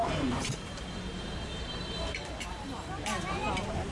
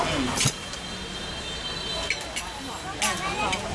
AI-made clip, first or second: first